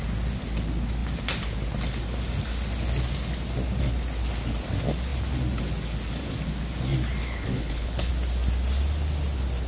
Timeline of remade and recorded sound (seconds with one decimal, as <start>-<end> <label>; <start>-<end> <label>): 0.0-7.2 recorded; 7.2-8.1 remade; 8.1-9.7 recorded